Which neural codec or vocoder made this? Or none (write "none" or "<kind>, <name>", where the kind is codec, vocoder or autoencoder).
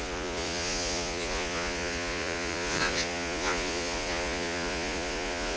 vocoder, Vocos